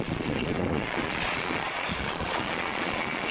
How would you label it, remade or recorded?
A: remade